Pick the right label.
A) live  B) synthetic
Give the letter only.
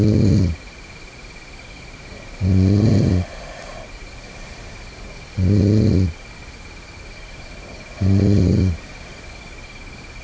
A